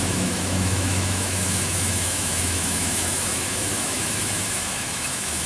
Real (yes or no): no